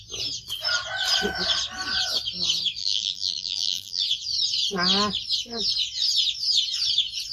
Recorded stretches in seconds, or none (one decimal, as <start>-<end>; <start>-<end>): 0.0-2.8; 4.0-7.3